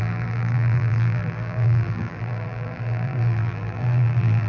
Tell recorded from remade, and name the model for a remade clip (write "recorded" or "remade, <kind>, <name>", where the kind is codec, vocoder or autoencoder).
remade, vocoder, BigVGAN v2